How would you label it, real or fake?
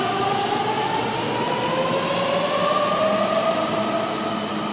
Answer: real